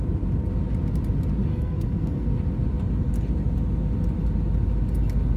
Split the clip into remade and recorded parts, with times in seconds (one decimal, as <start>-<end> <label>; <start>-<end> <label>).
0.0-1.5 recorded; 1.5-2.4 remade; 2.4-5.4 recorded